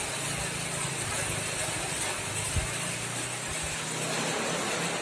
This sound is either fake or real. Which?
real